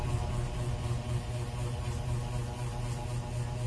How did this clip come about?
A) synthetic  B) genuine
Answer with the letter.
B